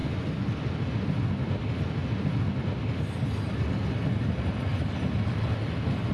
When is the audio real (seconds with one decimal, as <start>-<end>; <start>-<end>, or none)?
0.0-6.1